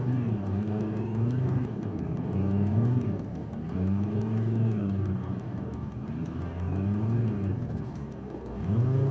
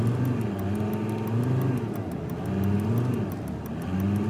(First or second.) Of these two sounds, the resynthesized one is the first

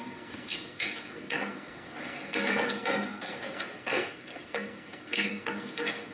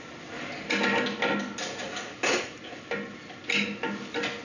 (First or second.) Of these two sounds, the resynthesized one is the first